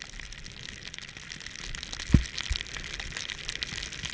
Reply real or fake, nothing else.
real